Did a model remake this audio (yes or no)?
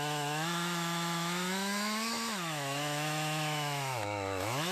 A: yes